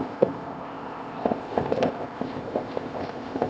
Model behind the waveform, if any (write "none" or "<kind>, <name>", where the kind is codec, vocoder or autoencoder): codec, ZipCodec